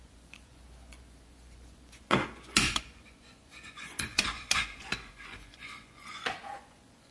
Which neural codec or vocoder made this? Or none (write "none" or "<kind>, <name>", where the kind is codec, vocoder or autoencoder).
vocoder, Vocos